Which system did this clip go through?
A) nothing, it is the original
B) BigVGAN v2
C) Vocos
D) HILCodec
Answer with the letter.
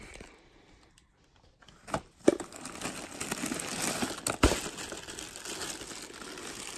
A